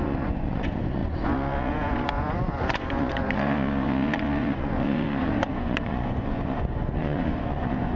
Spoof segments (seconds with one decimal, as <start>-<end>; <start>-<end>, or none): 0.0-8.0